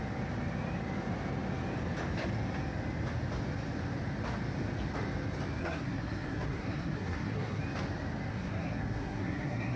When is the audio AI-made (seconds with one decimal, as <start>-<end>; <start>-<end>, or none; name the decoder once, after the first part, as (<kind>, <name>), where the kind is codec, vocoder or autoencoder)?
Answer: 5.6-7.6 (codec, SNAC); 8.3-9.8

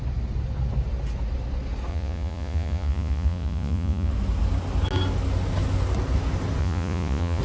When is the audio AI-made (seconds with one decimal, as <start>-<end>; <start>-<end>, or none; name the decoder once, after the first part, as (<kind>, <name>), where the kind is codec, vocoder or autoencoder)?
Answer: 1.9-4.1 (vocoder, Vocos); 6.6-7.4

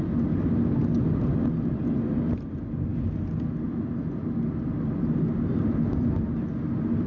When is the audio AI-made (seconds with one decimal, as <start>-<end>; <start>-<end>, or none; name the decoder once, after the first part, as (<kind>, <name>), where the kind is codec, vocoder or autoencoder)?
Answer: none

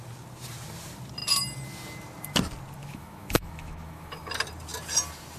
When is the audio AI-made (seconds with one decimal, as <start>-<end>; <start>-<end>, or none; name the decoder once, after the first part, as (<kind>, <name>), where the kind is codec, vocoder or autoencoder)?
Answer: 2.8-4.3 (autoencoder, DAC-VAE)

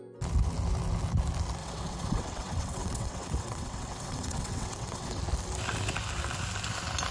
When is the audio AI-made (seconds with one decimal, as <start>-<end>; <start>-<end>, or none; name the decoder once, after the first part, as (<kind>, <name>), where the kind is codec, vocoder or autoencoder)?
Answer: 1.6-5.2 (vocoder, WaveNeXt)

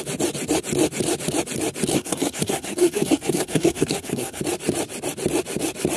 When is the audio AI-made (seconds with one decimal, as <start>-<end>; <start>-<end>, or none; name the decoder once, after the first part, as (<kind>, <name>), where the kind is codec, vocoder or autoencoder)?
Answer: 1.9-4.4 (codec, SNAC)

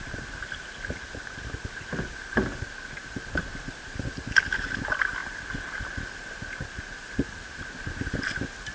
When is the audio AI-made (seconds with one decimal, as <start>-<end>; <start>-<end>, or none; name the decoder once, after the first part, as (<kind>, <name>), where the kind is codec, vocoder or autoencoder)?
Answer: none

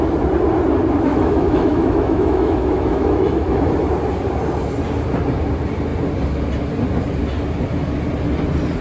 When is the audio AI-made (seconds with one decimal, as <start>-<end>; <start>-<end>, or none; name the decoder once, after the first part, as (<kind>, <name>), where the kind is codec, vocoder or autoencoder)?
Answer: 1.1-3.7 (autoencoder, DAC-VAE)